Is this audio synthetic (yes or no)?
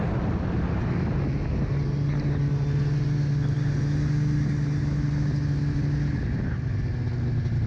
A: no